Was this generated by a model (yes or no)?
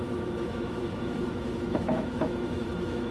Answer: yes